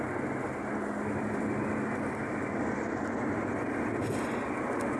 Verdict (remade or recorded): remade